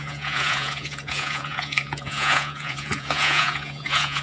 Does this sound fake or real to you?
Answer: fake